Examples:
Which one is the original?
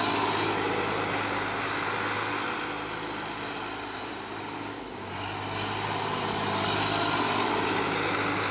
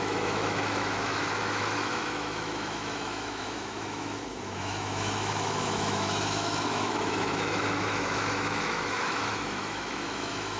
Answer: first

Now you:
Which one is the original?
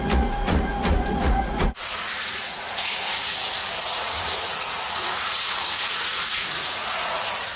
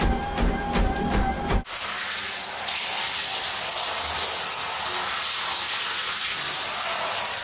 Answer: second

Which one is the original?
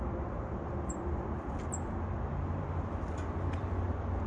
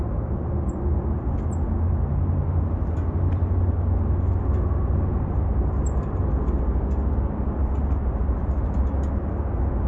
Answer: second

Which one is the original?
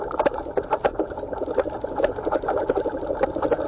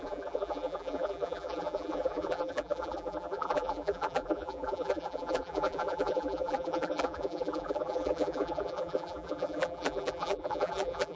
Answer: first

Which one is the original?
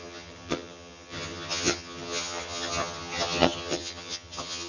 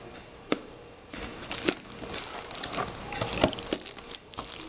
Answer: second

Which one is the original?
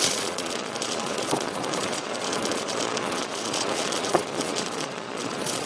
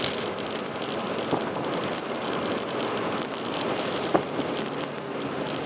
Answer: second